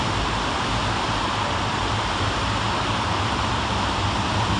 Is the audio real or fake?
real